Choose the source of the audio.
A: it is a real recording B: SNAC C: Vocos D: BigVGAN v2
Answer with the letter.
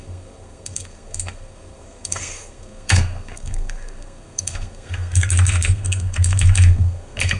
B